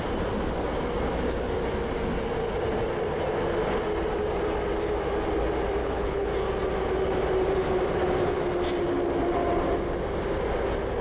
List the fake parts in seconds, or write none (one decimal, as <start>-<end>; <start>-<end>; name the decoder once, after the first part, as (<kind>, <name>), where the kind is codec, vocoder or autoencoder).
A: 5.8-6.3 (codec, HILCodec)